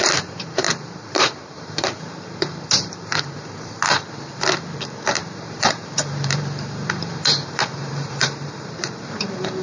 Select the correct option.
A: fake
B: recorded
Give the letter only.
A